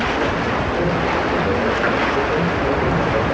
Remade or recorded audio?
recorded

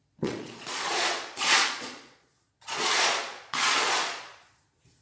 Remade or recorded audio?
remade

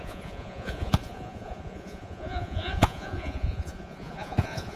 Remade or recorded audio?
remade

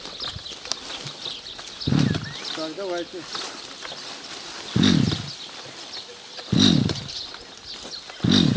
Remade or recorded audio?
recorded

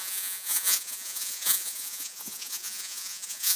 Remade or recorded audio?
remade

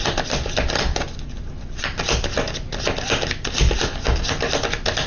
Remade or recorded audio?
recorded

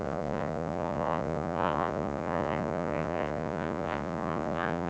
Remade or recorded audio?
remade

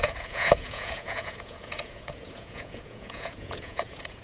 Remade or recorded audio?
remade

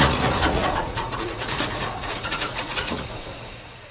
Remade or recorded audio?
remade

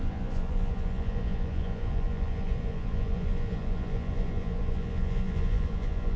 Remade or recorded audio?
remade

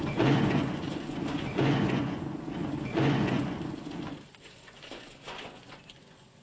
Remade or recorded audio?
remade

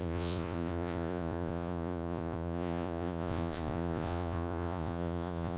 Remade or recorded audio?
remade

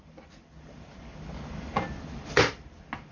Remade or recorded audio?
recorded